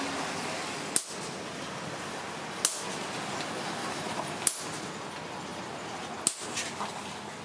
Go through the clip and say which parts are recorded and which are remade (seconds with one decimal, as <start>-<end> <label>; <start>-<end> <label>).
0.0-3.8 recorded; 3.8-4.3 remade; 4.3-7.4 recorded